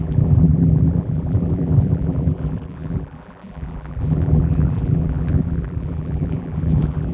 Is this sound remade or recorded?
remade